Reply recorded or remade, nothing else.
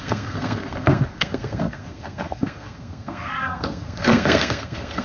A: remade